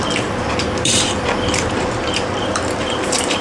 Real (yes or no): no